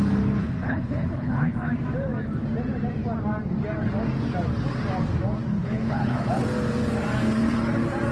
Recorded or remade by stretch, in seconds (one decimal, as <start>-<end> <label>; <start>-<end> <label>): 0.0-0.4 recorded; 0.4-1.7 remade; 1.7-5.5 recorded; 5.5-6.4 remade; 6.4-8.1 recorded